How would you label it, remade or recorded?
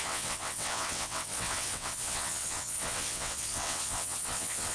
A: remade